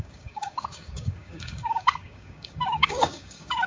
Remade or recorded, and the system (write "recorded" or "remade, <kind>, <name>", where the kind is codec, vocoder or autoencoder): remade, codec, DAC